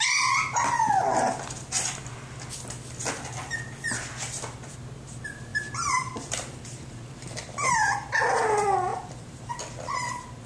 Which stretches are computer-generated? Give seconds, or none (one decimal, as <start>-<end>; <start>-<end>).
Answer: 5.5-7.7; 8.9-9.5